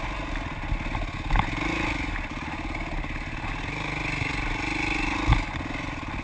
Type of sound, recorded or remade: recorded